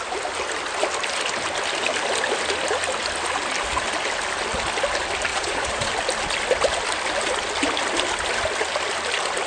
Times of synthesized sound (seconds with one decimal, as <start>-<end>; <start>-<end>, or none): 5.3-5.9